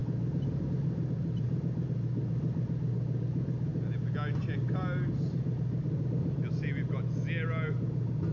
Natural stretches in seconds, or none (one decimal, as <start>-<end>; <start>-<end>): 0.0-8.3